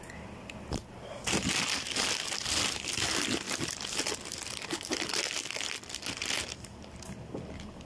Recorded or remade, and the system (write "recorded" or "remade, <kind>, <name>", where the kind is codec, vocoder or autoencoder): recorded